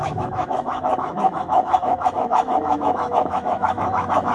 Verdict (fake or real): fake